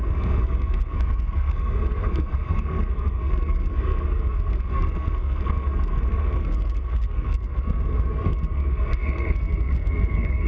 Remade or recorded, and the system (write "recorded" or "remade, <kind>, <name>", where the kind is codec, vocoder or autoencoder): remade, codec, SNAC